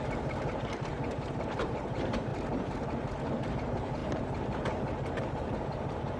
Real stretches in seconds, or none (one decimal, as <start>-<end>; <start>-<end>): 2.3-3.5